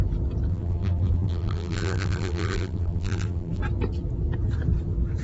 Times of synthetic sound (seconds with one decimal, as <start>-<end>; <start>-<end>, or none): 0.5-3.6

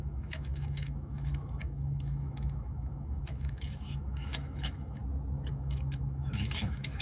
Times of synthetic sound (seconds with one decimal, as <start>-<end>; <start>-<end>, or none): 0.0-5.0; 5.5-7.0